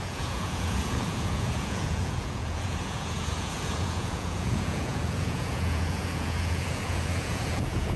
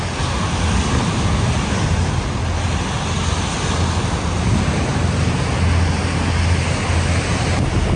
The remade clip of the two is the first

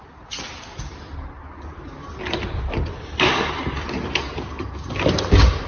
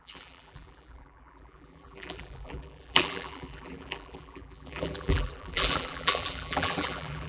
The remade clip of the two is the second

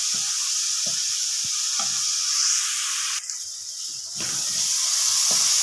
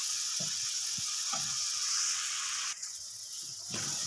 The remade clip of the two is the second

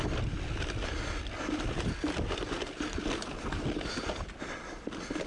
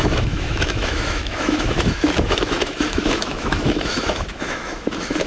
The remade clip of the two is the second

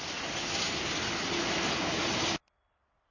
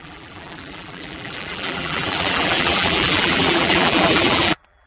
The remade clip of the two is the second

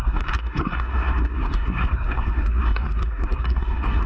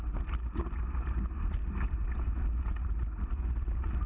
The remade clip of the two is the first